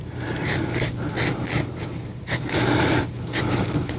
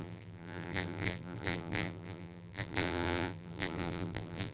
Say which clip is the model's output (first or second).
second